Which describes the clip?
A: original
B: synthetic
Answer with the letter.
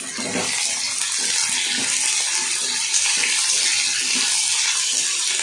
A